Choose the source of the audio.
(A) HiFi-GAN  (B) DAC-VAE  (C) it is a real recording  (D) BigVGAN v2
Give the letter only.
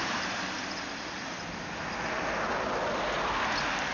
C